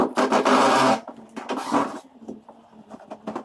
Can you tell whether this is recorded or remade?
recorded